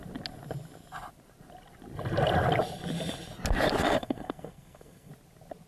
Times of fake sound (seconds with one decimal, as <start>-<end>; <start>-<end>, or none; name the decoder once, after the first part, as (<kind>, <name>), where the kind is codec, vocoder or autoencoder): 3.8-5.1 (codec, SNAC)